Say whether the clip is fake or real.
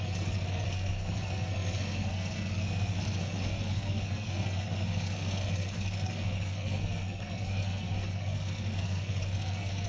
fake